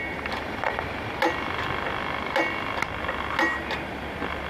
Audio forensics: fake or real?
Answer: real